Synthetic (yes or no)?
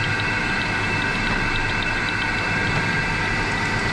no